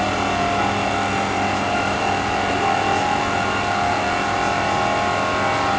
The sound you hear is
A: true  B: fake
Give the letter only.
A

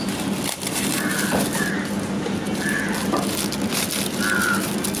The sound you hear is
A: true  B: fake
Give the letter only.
A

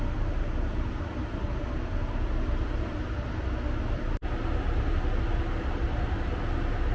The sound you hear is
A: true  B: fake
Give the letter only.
A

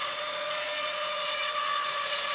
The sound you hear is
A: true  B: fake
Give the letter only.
B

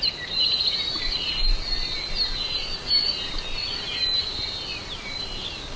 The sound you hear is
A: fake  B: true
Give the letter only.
B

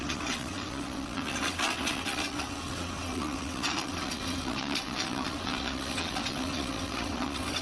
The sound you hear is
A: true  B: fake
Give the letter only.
B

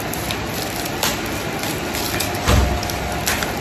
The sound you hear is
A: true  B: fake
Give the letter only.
A